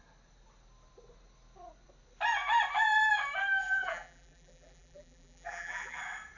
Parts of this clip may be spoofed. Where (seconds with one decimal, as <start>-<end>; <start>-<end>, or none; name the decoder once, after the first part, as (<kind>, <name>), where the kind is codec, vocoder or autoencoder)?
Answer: 3.6-6.0 (vocoder, BigVGAN v2)